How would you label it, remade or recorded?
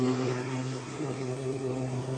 remade